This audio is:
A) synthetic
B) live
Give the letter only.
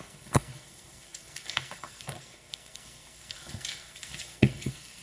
A